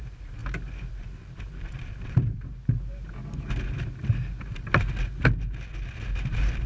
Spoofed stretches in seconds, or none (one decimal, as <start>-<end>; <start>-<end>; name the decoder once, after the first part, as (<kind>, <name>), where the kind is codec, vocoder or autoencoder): 0.0-0.4 (vocoder, BigVGAN v2); 0.9-2.5; 6.3-6.7